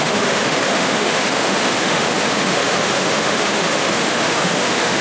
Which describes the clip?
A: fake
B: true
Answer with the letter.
A